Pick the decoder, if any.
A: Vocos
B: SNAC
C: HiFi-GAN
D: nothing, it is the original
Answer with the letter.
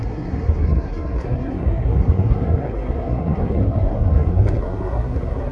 B